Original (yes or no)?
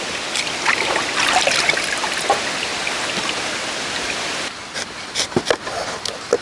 yes